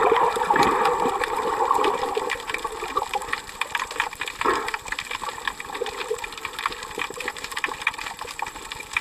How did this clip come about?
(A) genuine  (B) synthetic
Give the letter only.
A